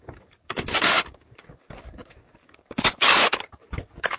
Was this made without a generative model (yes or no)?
no